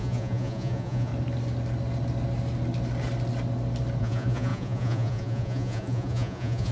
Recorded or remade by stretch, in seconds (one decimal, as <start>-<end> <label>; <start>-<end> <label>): 0.0-1.1 remade; 1.1-4.0 recorded; 4.0-6.7 remade